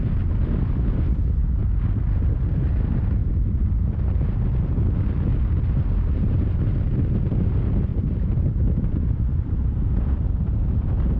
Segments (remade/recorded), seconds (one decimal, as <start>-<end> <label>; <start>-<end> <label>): 0.0-3.2 recorded; 3.2-4.4 remade; 4.4-7.9 recorded; 7.9-10.5 remade; 10.5-11.2 recorded